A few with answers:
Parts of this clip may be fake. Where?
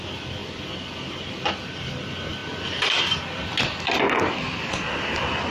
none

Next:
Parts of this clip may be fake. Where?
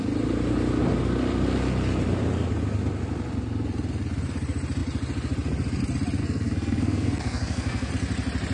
6.2-7.9 (codec, SNAC)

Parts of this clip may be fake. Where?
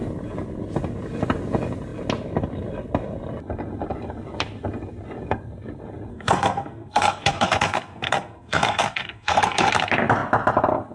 6.1-9.7 (codec, SNAC)